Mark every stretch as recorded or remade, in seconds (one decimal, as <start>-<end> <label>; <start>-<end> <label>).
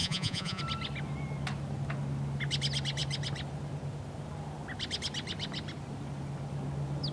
0.0-0.6 remade; 0.6-7.1 recorded